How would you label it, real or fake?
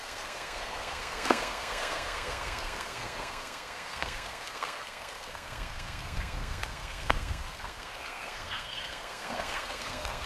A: fake